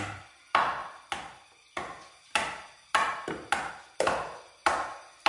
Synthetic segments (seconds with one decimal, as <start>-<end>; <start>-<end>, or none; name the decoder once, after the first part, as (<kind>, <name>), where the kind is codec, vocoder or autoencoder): none